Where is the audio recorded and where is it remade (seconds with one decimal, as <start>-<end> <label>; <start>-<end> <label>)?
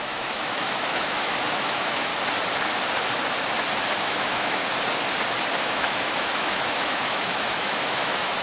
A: 0.0-2.1 remade; 2.1-4.0 recorded; 4.0-4.6 remade; 4.6-5.6 recorded; 5.6-8.4 remade